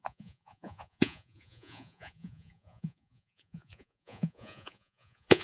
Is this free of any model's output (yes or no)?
no